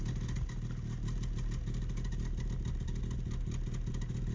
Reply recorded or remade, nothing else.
recorded